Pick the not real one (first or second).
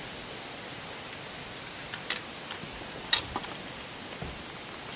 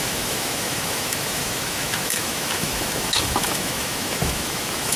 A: second